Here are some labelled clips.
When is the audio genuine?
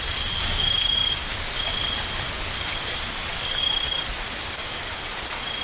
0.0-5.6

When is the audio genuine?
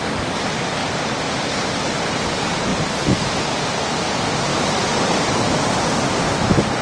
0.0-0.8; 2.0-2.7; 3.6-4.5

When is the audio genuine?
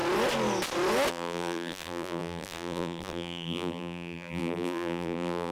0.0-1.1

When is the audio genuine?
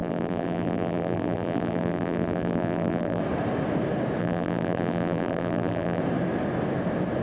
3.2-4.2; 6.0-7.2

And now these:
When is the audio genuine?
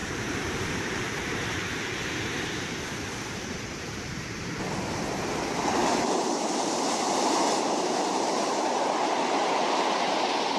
4.5-5.8; 8.5-10.6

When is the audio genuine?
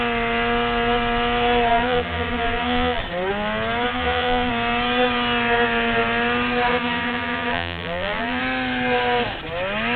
0.0-1.7; 3.0-3.9; 4.5-6.7; 8.4-10.0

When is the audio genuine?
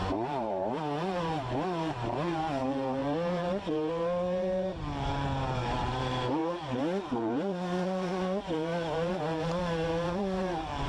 none